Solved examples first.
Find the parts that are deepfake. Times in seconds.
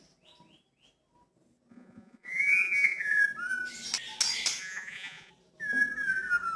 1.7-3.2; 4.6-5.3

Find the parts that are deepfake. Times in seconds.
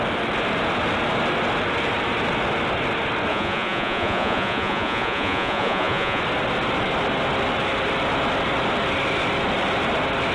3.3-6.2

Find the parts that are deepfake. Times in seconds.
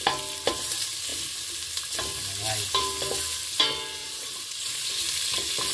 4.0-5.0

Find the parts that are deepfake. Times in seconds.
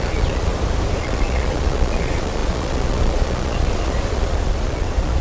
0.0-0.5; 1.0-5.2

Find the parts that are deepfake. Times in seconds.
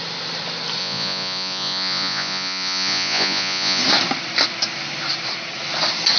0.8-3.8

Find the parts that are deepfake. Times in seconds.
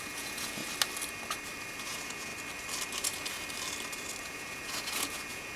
0.0-0.6; 1.8-2.3; 4.2-5.6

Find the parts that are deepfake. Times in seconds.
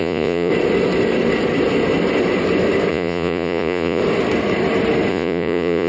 0.0-0.5; 2.9-4.0; 5.1-5.9